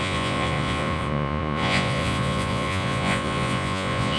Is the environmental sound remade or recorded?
remade